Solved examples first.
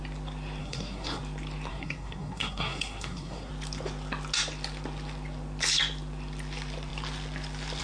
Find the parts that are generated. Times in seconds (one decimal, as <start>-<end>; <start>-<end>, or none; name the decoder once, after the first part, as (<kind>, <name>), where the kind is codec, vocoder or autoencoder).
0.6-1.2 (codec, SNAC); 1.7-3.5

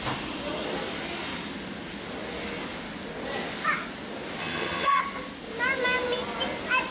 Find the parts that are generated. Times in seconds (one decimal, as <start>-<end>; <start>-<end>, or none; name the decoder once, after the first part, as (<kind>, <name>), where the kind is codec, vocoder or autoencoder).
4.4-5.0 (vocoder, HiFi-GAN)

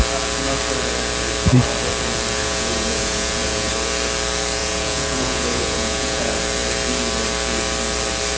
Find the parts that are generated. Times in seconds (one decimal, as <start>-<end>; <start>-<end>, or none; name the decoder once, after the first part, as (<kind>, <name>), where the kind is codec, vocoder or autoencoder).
2.4-3.7 (vocoder, Vocos); 4.6-6.4

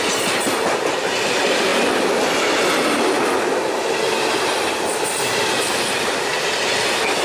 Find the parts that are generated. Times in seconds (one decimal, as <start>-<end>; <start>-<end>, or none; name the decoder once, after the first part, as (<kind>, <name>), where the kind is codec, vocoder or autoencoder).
none